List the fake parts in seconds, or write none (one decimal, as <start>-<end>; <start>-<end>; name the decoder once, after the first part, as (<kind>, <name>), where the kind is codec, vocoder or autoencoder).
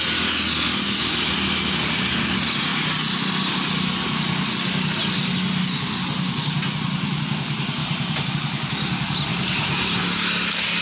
7.8-8.3 (vocoder, BigVGAN v2); 9.3-10.0